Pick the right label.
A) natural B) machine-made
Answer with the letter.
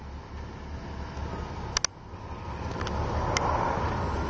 A